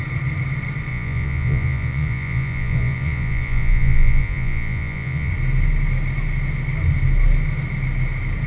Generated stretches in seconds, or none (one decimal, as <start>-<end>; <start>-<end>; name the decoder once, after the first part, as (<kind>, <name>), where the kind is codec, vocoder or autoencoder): 0.9-5.3 (vocoder, Vocos)

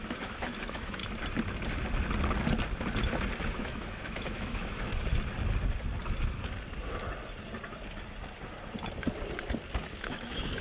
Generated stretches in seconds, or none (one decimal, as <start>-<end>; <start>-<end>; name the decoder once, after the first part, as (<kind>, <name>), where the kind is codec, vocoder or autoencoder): 0.0-1.0 (autoencoder, DAC-VAE); 3.5-4.9; 9.8-10.6